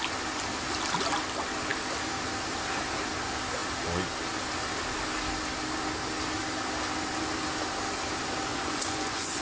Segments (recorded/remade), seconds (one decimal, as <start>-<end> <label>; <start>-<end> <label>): 0.0-8.5 recorded; 8.5-9.4 remade